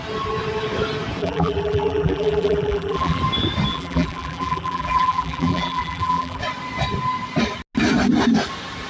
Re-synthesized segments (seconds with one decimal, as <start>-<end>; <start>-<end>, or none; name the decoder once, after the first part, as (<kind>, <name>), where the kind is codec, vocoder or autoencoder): 1.2-3.2 (vocoder, BigVGAN v2); 3.7-6.4